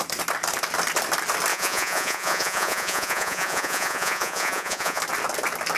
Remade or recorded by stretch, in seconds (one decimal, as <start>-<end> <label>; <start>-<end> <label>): 0.0-1.5 recorded; 1.5-5.0 remade; 5.0-5.8 recorded